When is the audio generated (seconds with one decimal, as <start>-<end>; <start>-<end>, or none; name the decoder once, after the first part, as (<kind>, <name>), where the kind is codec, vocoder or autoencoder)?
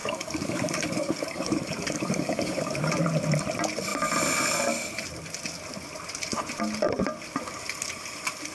0.0-2.9 (codec, DAC)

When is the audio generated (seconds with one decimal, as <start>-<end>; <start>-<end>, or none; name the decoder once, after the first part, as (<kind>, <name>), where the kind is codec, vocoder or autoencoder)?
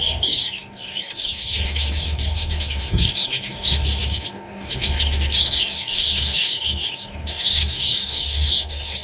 0.0-9.0 (codec, DAC)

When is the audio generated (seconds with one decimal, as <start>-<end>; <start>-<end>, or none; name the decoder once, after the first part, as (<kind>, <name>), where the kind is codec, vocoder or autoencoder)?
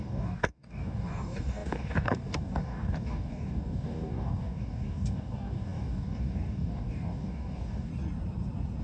0.0-7.9 (codec, DAC)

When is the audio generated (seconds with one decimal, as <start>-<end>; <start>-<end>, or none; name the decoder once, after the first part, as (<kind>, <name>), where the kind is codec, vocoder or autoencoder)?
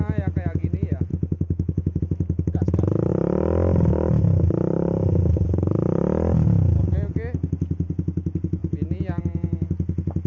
1.1-2.0 (codec, DAC)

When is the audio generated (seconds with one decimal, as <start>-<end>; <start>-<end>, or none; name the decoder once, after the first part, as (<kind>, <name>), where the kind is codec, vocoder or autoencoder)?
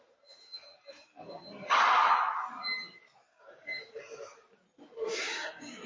3.3-4.0 (codec, DAC); 5.1-5.9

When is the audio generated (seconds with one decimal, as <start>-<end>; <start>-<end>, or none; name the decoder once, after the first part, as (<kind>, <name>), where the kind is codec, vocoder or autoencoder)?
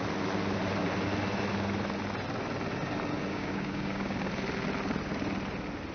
3.3-4.3 (codec, DAC)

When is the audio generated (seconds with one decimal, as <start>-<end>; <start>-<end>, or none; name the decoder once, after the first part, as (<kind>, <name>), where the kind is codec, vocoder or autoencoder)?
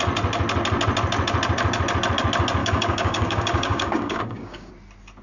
2.6-4.7 (codec, DAC)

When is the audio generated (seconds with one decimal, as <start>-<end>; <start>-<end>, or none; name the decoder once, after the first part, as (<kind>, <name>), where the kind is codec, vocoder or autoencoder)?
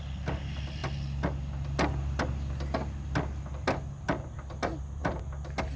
none